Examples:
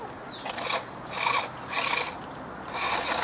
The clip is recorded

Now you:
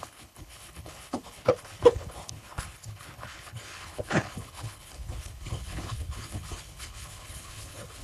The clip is remade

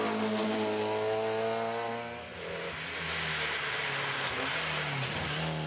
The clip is recorded